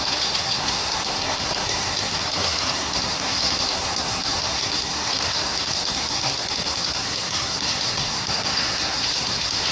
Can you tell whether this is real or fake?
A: fake